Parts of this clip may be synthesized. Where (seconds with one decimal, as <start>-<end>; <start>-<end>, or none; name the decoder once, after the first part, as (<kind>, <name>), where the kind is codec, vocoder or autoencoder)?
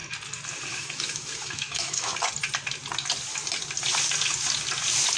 0.7-2.1 (autoencoder, DAC-VAE)